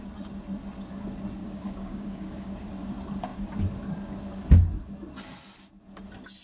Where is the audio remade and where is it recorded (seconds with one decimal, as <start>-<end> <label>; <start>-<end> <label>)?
0.0-1.4 recorded; 1.4-2.7 remade; 2.7-6.4 recorded

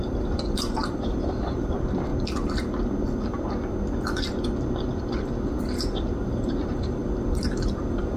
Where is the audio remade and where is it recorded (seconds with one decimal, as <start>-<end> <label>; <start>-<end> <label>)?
0.0-2.1 remade; 2.1-5.6 recorded; 5.6-8.2 remade

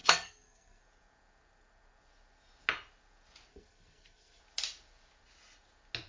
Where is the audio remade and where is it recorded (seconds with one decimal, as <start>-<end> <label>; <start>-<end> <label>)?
0.0-0.8 remade; 0.8-3.5 recorded; 3.5-4.4 remade; 4.4-6.1 recorded

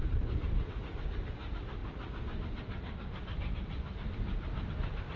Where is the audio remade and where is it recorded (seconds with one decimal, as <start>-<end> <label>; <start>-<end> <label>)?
0.0-5.2 recorded

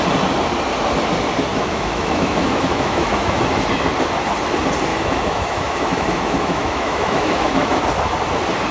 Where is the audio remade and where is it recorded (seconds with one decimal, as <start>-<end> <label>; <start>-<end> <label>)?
0.0-1.5 recorded; 1.5-3.4 remade; 3.4-4.9 recorded; 4.9-7.8 remade; 7.8-8.7 recorded